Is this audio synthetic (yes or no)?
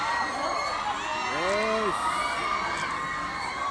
no